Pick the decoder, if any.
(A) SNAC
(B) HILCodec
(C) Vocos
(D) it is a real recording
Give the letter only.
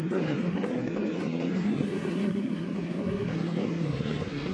A